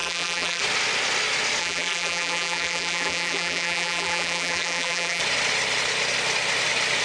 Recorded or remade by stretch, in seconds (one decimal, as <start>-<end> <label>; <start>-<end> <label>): 0.0-0.6 remade; 0.6-1.6 recorded; 1.6-5.2 remade; 5.2-7.0 recorded